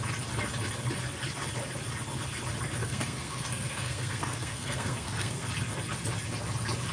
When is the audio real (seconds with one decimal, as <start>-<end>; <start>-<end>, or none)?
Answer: 0.0-2.8; 5.5-6.9